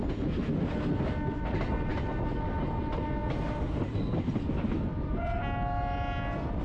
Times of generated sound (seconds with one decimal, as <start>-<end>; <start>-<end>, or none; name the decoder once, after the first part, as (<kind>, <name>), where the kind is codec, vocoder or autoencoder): 3.2-3.8 (vocoder, BigVGAN v2)